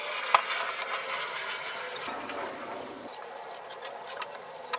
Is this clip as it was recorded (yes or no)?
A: yes